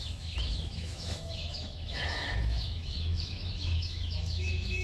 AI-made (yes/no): yes